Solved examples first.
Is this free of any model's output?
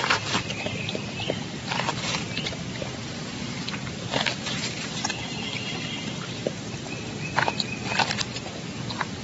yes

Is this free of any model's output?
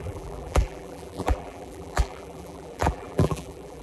no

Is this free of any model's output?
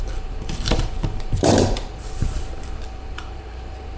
no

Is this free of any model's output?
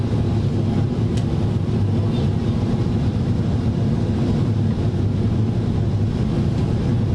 yes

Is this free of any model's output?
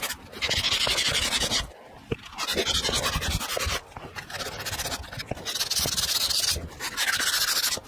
yes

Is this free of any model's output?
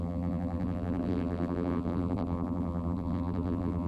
no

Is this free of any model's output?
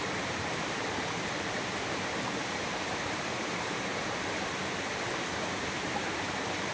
no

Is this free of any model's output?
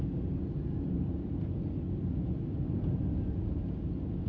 yes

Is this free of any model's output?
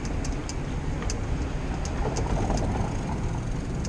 yes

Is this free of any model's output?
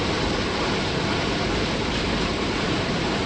no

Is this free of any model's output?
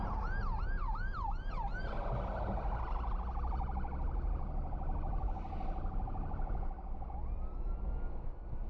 yes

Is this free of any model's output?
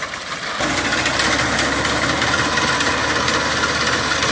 yes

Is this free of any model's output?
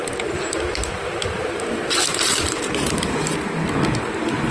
yes